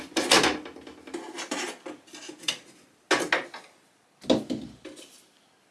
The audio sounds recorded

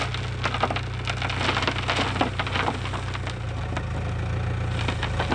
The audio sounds recorded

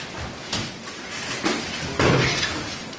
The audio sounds remade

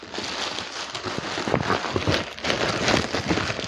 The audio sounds recorded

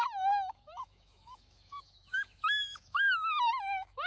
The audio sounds remade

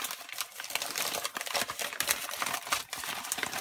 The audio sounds remade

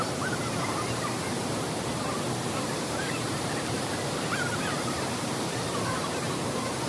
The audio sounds remade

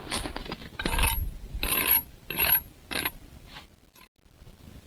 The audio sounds recorded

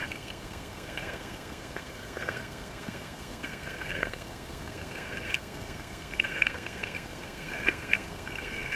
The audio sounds remade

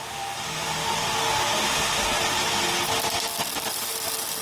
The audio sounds recorded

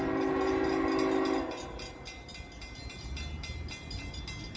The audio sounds recorded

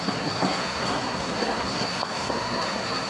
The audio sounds remade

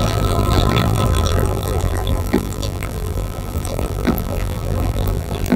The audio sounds remade